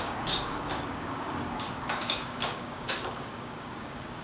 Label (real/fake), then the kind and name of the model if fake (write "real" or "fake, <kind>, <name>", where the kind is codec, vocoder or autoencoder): fake, codec, DAC